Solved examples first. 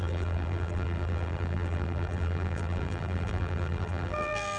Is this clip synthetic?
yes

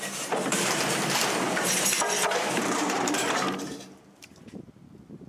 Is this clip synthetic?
yes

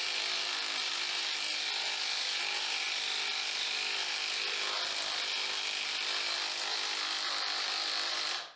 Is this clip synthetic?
no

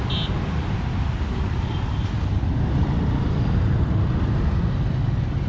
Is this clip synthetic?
no